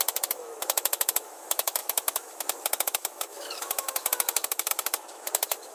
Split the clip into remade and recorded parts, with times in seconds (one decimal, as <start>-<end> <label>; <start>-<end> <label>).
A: 0.0-5.7 remade